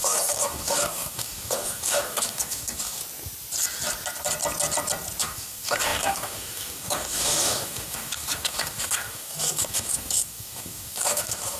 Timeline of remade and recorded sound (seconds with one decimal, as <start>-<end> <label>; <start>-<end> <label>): 0.0-3.0 remade; 3.0-5.2 recorded; 5.2-11.6 remade